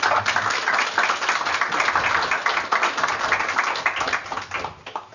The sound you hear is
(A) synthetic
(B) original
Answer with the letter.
B